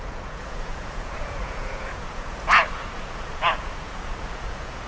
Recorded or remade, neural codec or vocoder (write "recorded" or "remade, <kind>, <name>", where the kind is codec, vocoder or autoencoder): remade, vocoder, Vocos